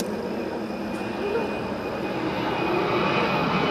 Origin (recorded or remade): recorded